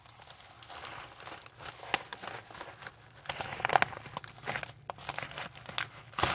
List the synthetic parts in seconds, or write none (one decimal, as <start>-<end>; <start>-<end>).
none